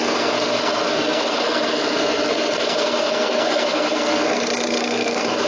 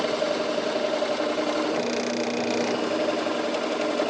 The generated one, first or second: first